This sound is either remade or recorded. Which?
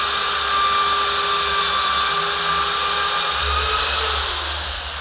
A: recorded